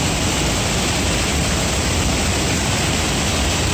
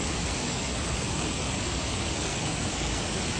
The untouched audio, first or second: first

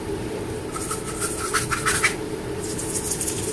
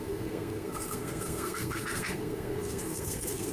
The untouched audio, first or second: first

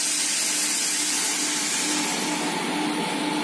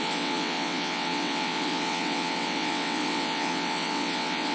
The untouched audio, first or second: first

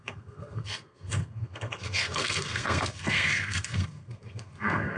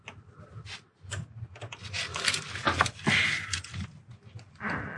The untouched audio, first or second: second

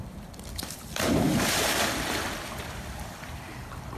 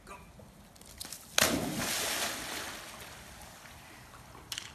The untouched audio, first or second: second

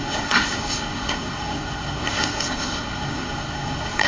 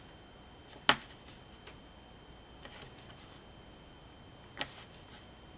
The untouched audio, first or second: second